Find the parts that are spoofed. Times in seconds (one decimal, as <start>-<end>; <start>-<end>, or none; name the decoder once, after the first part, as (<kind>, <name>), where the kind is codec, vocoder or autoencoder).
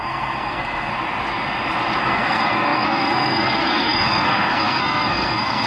0.0-0.9 (codec, SNAC); 2.0-5.7